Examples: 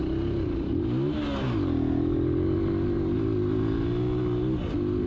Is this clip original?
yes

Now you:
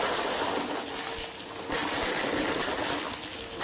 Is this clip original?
yes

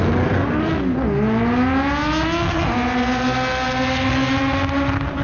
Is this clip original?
yes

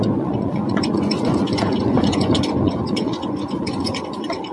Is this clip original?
no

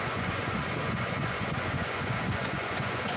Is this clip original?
no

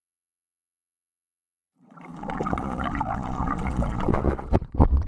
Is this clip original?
no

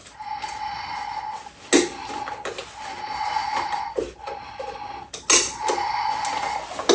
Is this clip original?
yes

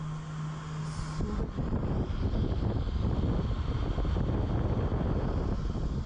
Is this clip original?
yes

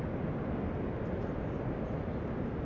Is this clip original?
yes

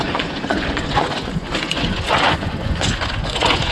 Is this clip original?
no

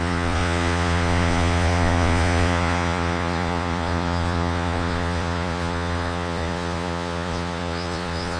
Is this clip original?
no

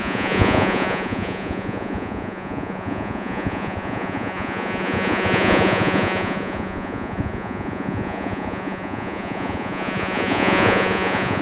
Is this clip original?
no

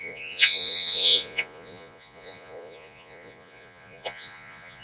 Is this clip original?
no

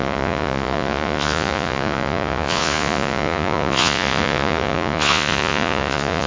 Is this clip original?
no